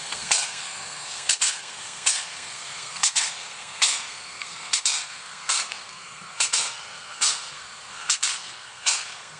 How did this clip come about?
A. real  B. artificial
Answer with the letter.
B